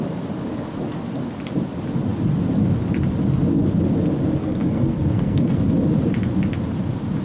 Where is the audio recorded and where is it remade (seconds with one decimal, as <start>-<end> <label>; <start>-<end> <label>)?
0.0-4.4 recorded; 4.4-5.6 remade; 5.6-7.2 recorded